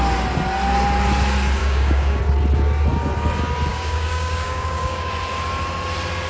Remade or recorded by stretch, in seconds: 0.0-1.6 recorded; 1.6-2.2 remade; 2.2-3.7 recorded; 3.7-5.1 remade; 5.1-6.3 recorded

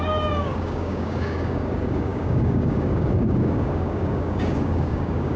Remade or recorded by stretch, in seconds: 0.0-5.4 remade

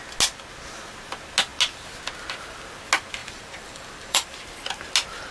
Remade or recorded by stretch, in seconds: 0.0-3.2 recorded; 3.2-4.4 remade; 4.4-5.3 recorded

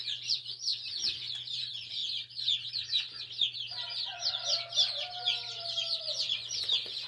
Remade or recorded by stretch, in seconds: 0.0-2.0 remade; 2.0-6.0 recorded; 6.0-7.1 remade

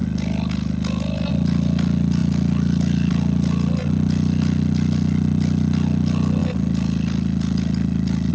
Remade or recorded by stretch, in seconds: 0.0-8.3 recorded